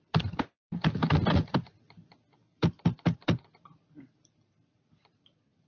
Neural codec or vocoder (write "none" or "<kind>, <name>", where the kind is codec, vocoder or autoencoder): vocoder, BigVGAN v2